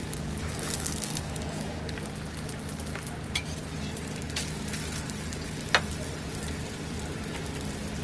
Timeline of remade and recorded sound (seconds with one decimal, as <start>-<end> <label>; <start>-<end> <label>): 0.0-2.1 remade; 2.1-8.0 recorded